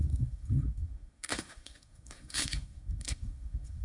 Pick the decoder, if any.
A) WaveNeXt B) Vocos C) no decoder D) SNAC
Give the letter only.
D